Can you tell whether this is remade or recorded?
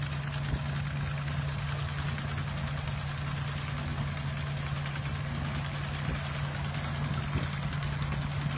recorded